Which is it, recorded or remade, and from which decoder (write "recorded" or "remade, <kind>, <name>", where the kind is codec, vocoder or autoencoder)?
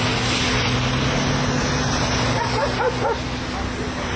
recorded